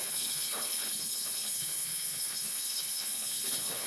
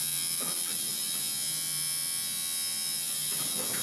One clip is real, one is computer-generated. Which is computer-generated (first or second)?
first